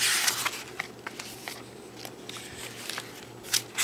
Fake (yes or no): no